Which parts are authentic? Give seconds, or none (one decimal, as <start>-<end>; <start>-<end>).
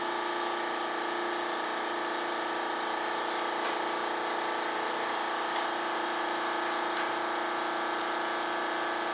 0.0-9.1